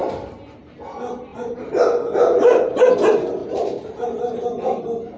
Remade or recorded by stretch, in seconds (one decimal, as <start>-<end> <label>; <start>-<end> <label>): 0.0-1.3 recorded; 1.3-2.9 remade; 2.9-3.4 recorded; 3.4-4.8 remade; 4.8-5.2 recorded